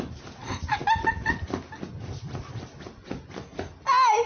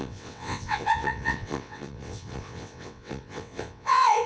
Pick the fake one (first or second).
second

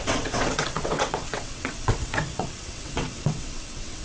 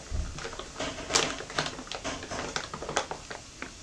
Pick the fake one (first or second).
first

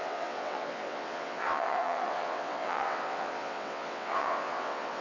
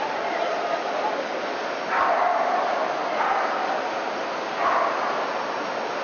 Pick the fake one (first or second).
first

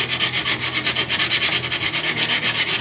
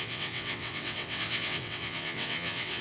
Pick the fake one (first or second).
second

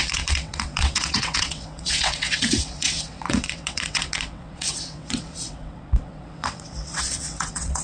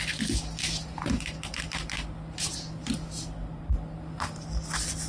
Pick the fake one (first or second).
first